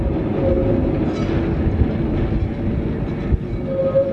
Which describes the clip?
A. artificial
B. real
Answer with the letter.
B